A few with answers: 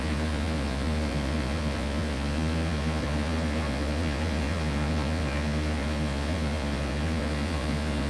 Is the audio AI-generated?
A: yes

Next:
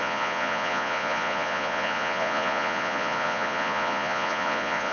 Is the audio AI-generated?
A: yes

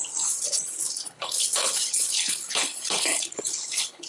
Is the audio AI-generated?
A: yes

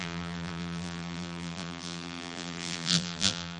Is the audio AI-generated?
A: yes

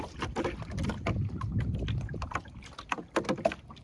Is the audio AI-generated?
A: yes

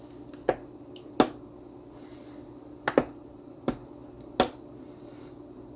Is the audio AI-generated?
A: no